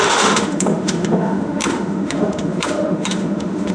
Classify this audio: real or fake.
fake